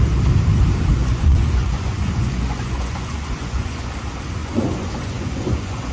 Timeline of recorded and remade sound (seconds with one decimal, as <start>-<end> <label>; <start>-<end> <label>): 0.0-1.0 recorded; 1.0-3.9 remade; 3.9-4.4 recorded; 4.4-5.9 remade